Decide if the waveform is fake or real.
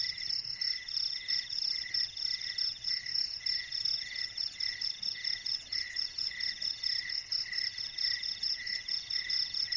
real